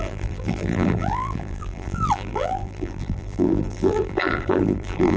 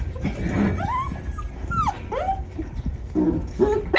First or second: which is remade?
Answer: first